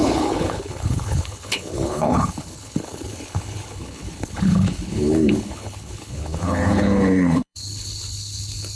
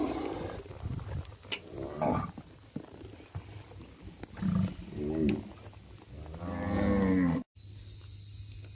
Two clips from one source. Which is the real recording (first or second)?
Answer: second